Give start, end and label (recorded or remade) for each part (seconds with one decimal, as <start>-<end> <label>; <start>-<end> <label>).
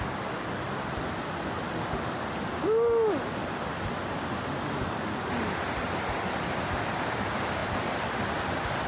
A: 0.0-8.9 recorded